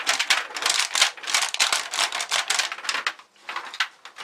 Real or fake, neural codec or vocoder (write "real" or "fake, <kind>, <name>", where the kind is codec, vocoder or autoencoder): real